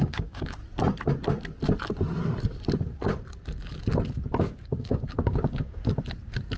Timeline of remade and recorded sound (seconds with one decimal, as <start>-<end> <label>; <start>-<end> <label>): 0.0-0.6 remade; 0.6-4.4 recorded; 4.4-5.8 remade; 5.8-6.6 recorded